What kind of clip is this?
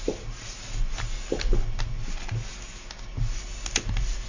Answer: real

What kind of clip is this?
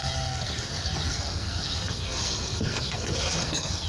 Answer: fake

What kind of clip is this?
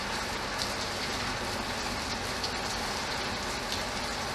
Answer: real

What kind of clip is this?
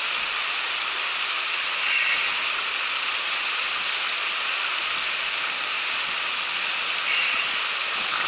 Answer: real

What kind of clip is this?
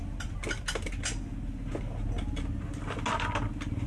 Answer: real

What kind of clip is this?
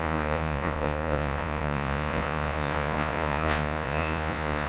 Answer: fake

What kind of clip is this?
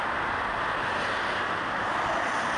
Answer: real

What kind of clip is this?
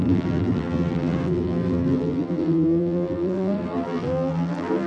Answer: fake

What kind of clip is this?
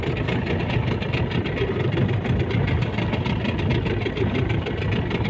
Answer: real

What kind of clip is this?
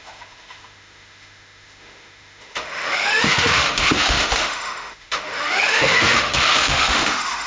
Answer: fake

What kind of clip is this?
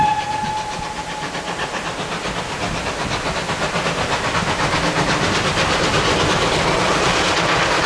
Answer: real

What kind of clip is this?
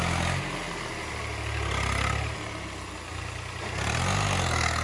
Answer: real